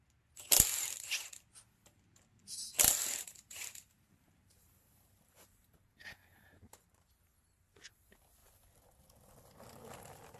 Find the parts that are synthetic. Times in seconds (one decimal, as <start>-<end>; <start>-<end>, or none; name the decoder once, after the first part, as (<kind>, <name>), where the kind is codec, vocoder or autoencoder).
2.3-7.1 (vocoder, BigVGAN v2)